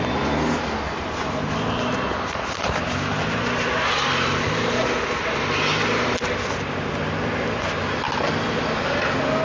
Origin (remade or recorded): recorded